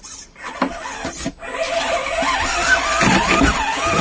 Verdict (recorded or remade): recorded